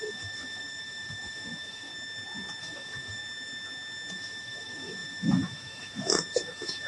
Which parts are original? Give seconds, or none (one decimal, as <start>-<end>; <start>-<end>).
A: 1.9-2.6; 3.2-4.1